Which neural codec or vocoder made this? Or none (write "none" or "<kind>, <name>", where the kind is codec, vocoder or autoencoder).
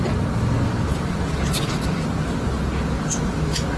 none